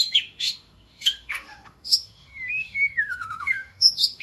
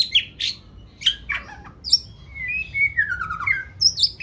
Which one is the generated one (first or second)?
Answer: first